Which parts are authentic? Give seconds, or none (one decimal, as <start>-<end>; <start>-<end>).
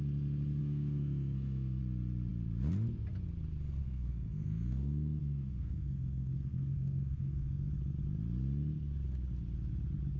0.0-0.6; 1.8-3.8; 7.7-10.2